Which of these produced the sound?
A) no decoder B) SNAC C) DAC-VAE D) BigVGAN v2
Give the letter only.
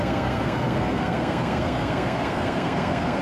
B